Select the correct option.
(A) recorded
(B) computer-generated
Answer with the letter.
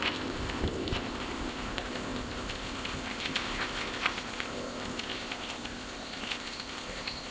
B